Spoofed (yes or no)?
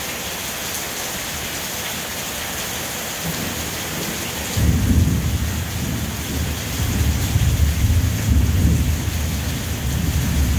no